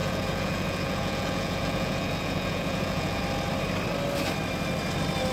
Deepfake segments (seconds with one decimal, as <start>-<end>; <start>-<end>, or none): 0.0-3.2